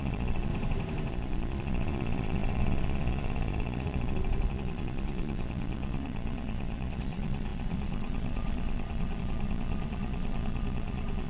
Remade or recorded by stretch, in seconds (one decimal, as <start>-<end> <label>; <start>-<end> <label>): 0.0-0.5 remade; 0.5-1.1 recorded; 1.1-11.3 remade